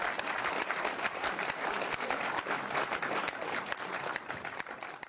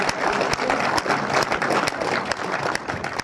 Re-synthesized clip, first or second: first